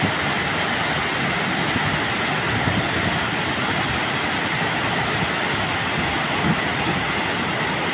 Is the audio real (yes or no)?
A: yes